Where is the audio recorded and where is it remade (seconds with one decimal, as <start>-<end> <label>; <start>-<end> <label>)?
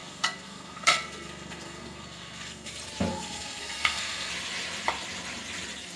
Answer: 0.0-2.7 remade; 2.7-3.1 recorded; 3.1-4.3 remade; 4.3-6.0 recorded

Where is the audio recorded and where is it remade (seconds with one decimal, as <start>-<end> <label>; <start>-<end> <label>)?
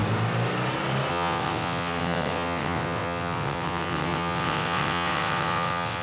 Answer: 0.0-1.1 recorded; 1.1-6.0 remade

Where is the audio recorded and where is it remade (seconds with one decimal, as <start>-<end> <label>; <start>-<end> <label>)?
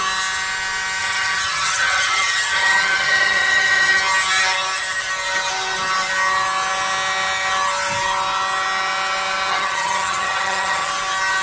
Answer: 0.0-1.0 recorded; 1.0-4.0 remade; 4.0-9.5 recorded; 9.5-10.9 remade; 10.9-11.4 recorded